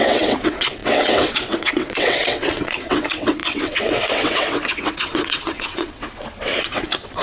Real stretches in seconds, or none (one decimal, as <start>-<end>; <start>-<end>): none